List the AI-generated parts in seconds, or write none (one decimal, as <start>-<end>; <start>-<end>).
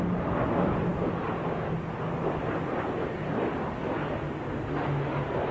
none